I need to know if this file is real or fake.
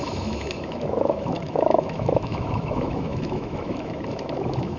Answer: fake